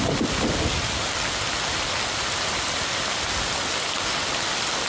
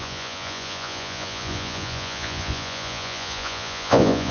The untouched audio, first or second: first